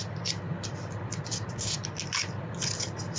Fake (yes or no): no